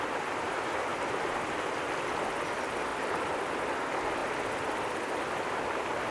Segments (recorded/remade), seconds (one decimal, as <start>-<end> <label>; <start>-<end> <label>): 0.0-6.1 recorded